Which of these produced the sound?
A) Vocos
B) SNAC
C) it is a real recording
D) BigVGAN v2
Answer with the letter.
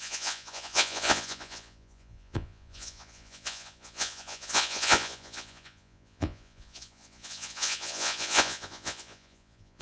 A